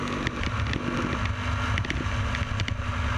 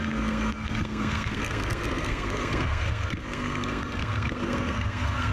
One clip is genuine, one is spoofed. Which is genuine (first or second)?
first